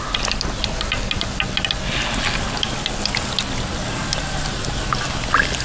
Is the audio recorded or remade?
recorded